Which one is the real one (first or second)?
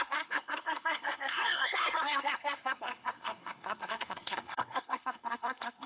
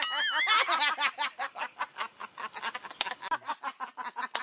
second